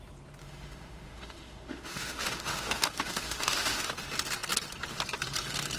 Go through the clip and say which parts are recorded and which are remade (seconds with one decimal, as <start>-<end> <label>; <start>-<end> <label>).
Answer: 0.0-0.4 recorded; 0.4-3.9 remade; 3.9-5.8 recorded